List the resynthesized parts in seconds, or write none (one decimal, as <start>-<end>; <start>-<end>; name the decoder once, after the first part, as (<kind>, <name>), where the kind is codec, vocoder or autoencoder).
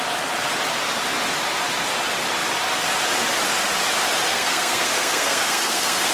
4.3-6.1 (codec, SNAC)